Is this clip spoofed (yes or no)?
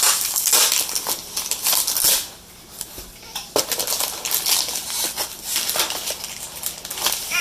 no